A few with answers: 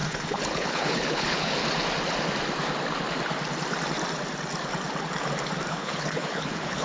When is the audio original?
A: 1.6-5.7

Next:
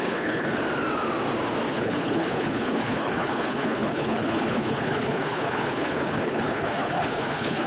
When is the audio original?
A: 0.6-1.7